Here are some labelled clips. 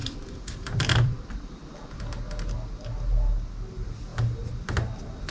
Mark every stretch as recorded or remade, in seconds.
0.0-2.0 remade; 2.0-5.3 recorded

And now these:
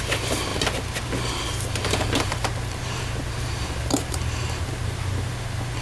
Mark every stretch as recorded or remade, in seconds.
0.0-1.8 recorded; 1.8-5.3 remade; 5.3-5.8 recorded

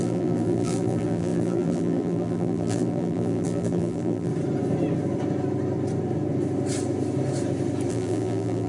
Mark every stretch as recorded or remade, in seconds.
0.0-4.3 remade; 4.3-7.9 recorded; 7.9-8.7 remade

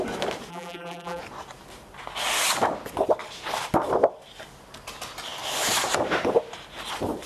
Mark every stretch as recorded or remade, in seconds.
0.0-0.5 recorded; 0.5-1.2 remade; 1.2-7.3 recorded

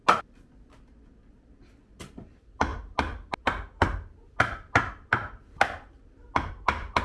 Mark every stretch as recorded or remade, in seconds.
0.0-7.0 recorded

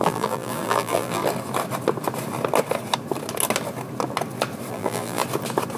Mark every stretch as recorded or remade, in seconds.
0.0-1.2 remade; 1.2-4.7 recorded; 4.7-5.2 remade; 5.2-5.8 recorded

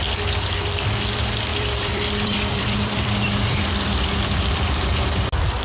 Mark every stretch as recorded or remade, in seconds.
0.0-1.5 recorded; 1.5-3.6 remade; 3.6-5.6 recorded

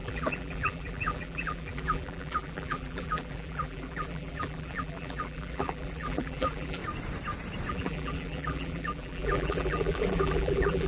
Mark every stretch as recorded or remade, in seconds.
0.0-6.8 remade; 6.8-7.7 recorded; 7.7-10.9 remade